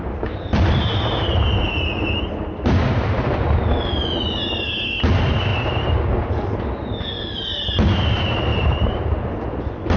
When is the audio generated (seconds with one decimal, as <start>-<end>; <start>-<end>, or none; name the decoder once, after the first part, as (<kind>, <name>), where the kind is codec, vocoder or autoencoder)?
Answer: 8.5-9.0 (vocoder, BigVGAN v2)